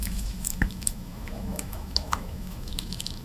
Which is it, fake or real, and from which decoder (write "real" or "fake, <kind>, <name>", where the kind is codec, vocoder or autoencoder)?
fake, autoencoder, DAC-VAE